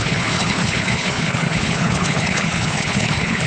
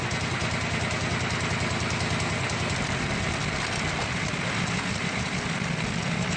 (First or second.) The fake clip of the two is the first